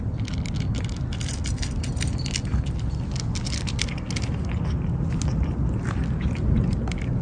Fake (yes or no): no